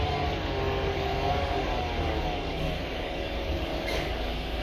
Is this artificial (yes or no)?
yes